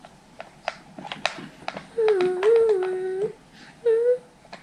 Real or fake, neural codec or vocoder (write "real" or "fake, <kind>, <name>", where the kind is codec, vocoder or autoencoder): real